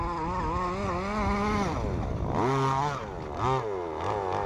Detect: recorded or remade recorded